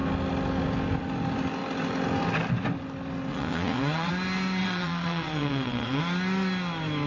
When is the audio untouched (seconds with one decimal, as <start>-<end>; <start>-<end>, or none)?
0.0-3.3; 4.1-4.6; 6.0-7.1